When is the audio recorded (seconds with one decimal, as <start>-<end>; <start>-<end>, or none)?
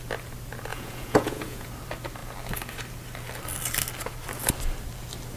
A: 0.0-0.7; 1.7-5.4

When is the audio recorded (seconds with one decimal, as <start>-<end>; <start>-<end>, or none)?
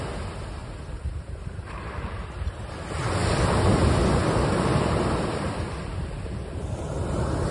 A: 0.0-0.6; 2.6-7.5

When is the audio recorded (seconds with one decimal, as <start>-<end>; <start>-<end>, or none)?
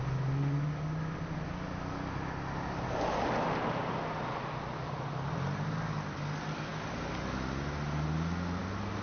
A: 0.0-9.0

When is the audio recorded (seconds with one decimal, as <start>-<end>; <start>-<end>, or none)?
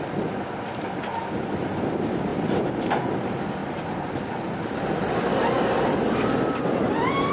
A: 0.0-2.3; 2.9-3.6; 6.6-7.3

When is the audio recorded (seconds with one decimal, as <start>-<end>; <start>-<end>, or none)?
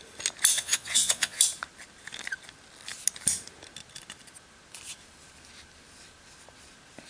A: 0.0-0.5; 1.4-7.1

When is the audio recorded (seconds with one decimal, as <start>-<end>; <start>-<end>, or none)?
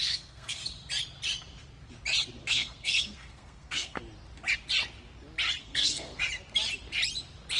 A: 0.6-2.4; 4.0-5.6; 6.2-7.6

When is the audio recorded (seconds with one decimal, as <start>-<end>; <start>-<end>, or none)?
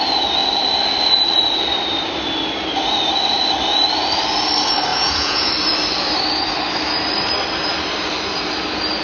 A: 0.0-4.9; 5.5-9.0